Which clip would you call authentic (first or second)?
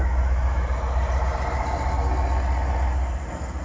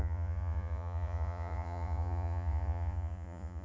first